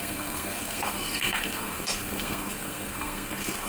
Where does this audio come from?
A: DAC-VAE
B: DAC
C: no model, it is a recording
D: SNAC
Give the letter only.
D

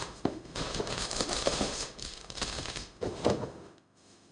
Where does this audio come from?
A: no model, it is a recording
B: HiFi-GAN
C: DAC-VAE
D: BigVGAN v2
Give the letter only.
C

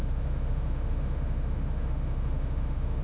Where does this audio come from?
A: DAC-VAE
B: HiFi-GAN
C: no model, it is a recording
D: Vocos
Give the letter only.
A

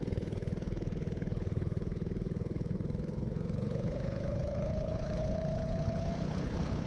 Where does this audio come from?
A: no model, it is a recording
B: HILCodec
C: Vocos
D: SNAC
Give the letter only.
B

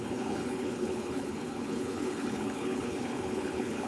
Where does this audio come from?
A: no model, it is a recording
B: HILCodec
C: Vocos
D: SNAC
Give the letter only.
B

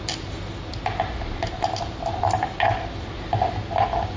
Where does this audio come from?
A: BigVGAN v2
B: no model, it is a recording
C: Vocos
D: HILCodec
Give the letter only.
B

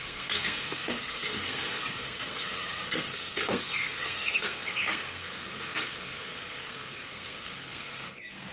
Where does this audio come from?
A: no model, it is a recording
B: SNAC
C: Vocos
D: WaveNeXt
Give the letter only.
B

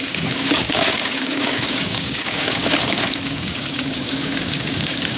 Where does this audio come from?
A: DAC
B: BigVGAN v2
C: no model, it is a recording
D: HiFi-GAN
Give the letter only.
A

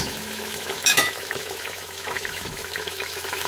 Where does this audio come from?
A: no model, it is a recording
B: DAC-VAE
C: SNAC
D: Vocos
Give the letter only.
B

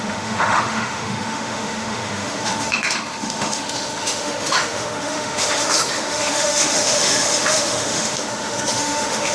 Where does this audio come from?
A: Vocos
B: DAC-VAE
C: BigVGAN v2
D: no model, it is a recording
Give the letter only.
B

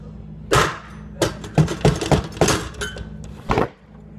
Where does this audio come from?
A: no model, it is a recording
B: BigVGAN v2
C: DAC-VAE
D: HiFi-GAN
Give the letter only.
A